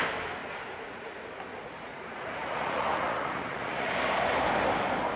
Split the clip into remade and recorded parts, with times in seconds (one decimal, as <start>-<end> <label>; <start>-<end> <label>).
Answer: 0.0-0.4 recorded; 0.4-1.1 remade; 1.1-1.5 recorded; 1.5-3.9 remade; 3.9-5.2 recorded